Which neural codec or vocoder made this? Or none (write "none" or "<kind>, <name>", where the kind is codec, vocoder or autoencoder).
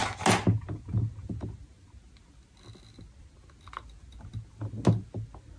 none